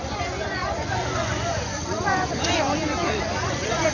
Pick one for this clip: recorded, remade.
remade